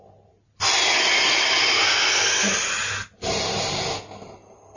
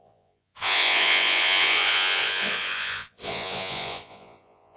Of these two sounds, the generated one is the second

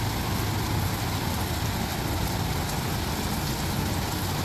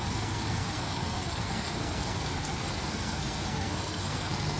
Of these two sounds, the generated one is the second